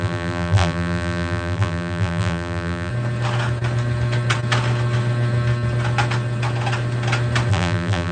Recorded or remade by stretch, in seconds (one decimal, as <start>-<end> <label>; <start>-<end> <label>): 0.0-2.9 remade; 2.9-7.5 recorded; 7.5-8.1 remade